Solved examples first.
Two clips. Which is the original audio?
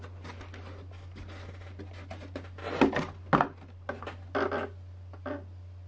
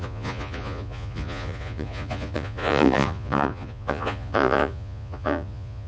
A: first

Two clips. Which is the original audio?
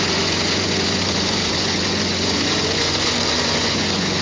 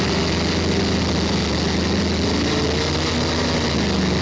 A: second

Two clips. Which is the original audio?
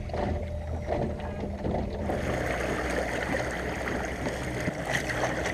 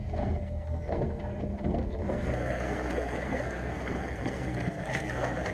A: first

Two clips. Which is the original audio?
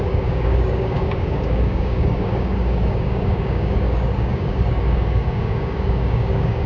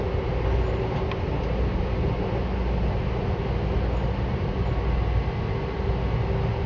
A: second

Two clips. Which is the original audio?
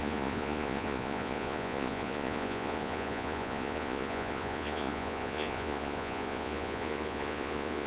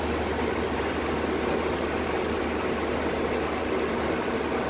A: second